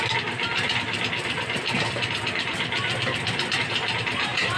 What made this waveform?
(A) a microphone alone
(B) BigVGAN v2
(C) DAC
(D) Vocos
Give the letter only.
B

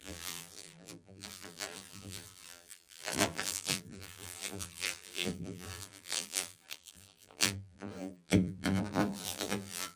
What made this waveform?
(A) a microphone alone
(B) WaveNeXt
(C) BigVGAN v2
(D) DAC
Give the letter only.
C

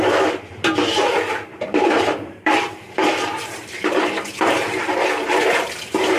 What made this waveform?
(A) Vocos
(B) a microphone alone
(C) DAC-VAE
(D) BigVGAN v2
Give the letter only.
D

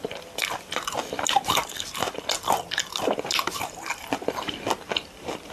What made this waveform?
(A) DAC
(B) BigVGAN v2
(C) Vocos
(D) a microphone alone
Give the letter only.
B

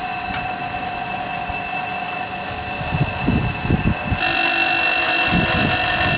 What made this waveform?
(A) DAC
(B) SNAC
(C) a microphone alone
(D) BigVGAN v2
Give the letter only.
C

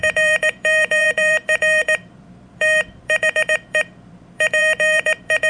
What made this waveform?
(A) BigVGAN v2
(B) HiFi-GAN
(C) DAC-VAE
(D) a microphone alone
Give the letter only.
A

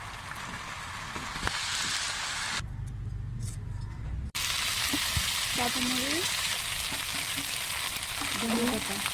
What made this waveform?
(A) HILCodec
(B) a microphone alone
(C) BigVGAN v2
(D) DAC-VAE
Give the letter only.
C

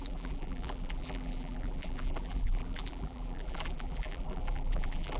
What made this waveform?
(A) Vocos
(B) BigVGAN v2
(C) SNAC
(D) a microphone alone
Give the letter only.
B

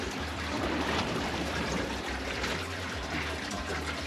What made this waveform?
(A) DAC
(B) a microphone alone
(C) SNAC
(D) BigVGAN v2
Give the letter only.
D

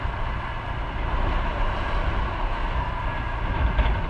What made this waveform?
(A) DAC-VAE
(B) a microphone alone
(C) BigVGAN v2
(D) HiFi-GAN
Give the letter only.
B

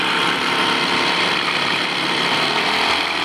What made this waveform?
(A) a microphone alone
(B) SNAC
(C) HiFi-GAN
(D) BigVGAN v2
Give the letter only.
A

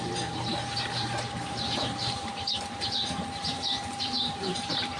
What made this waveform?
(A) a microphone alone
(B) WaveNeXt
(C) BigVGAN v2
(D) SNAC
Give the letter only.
C